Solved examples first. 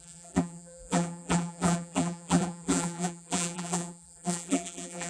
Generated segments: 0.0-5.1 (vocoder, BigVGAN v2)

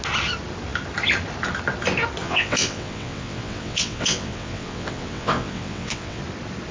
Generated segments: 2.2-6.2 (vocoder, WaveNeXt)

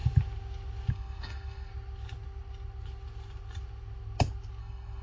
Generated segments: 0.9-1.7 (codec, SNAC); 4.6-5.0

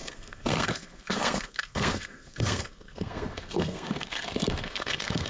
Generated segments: 0.0-5.3 (codec, SNAC)

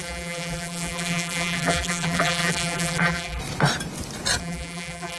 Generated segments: 0.0-3.4 (vocoder, BigVGAN v2); 4.4-5.2

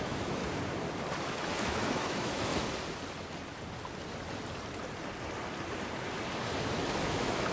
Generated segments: 0.0-0.4 (autoencoder, DAC-VAE); 1.6-2.5; 7.0-7.5